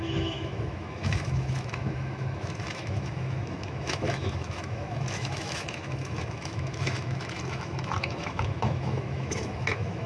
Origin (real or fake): fake